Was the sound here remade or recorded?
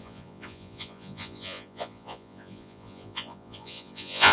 remade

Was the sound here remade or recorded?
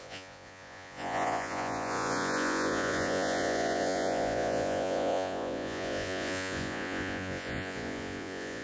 remade